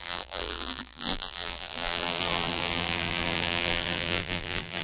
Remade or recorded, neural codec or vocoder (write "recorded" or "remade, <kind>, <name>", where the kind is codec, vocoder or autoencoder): remade, vocoder, BigVGAN v2